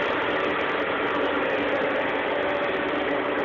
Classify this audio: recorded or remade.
recorded